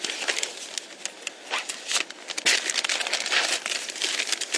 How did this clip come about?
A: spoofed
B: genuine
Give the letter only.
B